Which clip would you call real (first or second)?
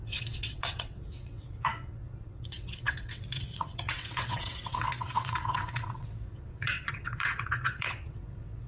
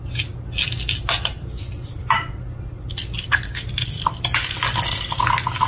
second